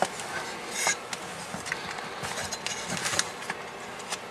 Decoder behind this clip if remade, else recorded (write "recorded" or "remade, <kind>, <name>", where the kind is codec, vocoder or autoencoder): recorded